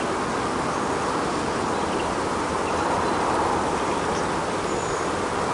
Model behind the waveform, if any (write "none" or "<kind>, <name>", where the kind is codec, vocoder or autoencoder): none